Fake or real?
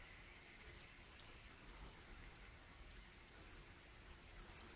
real